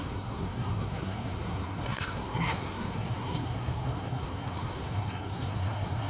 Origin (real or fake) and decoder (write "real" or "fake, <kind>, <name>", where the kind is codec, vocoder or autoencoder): fake, codec, SNAC